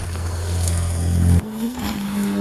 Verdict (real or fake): fake